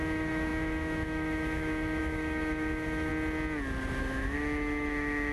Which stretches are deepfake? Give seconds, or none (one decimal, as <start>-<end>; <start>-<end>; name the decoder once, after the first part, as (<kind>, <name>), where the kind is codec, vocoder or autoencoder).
0.0-3.1 (autoencoder, DAC-VAE); 4.0-5.3